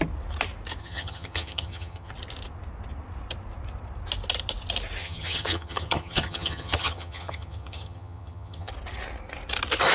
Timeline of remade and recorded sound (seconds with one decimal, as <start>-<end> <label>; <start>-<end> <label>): 0.0-0.8 recorded; 0.8-2.1 remade; 2.1-5.0 recorded; 5.0-8.7 remade; 8.7-9.9 recorded